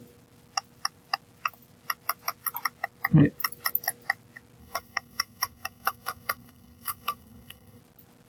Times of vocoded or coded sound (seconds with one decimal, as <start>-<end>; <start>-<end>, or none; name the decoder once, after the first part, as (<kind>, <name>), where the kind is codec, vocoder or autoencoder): 4.6-7.8 (codec, SNAC)